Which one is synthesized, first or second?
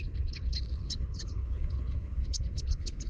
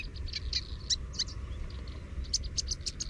first